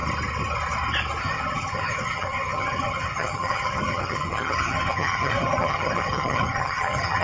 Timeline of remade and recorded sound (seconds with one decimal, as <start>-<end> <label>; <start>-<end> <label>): 0.0-1.2 recorded; 1.2-7.2 remade